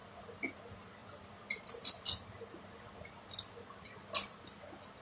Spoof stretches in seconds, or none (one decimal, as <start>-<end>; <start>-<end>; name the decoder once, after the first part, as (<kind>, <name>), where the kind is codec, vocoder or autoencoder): 1.0-4.0 (vocoder, BigVGAN v2)